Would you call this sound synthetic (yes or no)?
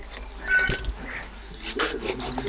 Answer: no